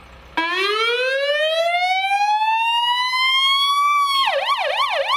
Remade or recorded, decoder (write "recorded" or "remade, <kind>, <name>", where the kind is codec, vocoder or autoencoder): recorded